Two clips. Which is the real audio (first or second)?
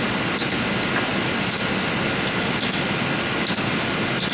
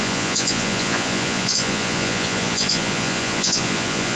first